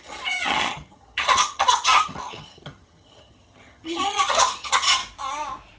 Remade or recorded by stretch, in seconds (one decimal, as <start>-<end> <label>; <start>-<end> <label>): 0.0-5.0 remade; 5.0-5.8 recorded